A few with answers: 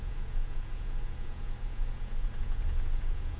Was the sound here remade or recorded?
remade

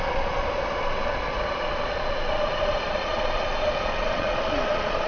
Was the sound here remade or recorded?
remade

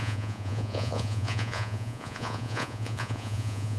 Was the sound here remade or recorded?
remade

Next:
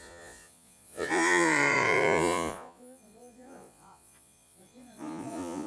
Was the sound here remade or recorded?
remade